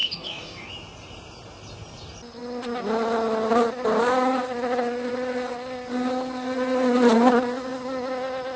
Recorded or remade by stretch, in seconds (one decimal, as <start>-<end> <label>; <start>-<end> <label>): 0.0-0.7 remade; 0.7-8.6 recorded